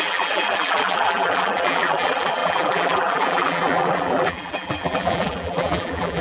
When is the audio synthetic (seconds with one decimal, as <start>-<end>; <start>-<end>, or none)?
0.0-6.2